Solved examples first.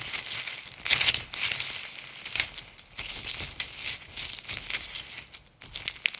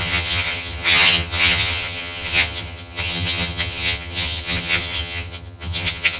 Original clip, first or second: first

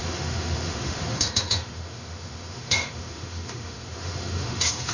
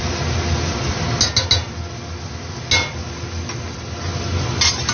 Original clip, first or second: second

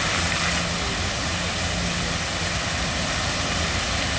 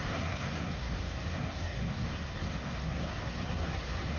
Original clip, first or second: first